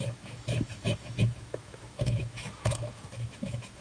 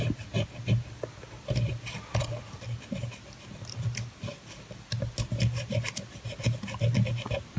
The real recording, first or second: second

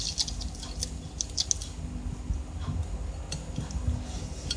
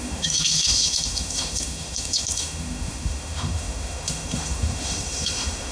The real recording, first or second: first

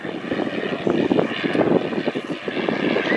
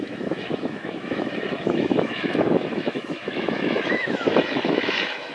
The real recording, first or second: first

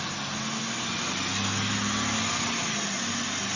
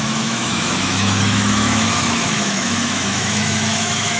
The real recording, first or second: first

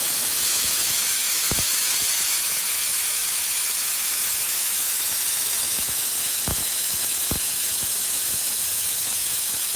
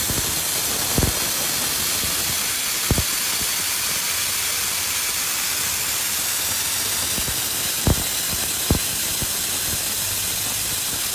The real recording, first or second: second